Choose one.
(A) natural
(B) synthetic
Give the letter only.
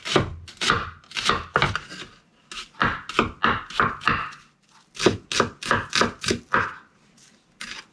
A